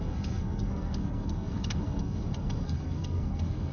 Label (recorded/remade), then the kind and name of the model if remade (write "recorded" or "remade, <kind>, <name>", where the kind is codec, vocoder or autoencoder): remade, codec, SNAC